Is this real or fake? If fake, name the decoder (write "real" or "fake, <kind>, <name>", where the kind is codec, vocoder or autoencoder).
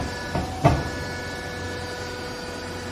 real